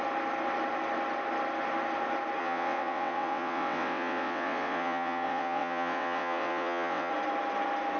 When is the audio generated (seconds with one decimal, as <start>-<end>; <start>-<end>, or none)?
2.4-7.1